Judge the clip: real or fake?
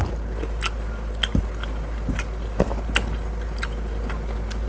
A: real